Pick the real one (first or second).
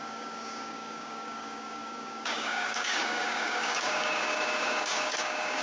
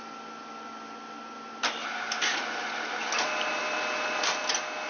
second